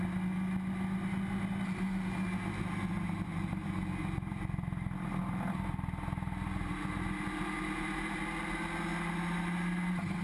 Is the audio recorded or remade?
recorded